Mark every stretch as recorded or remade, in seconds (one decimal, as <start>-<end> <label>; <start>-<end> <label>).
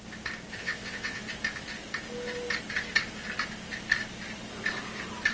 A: 0.0-0.6 recorded; 0.6-1.2 remade; 1.2-5.3 recorded